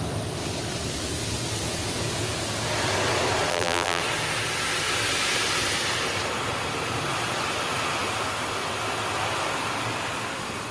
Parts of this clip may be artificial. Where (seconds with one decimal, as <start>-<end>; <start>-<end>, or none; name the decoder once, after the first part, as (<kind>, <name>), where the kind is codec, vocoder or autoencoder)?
3.5-4.0 (vocoder, BigVGAN v2)